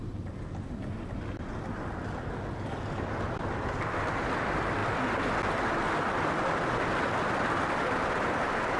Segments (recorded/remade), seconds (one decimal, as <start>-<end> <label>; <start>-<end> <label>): 0.0-8.8 recorded